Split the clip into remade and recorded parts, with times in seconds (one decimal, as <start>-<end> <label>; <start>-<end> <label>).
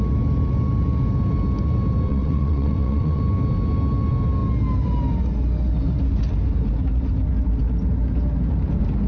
0.0-2.1 recorded; 2.1-3.2 remade; 3.2-9.1 recorded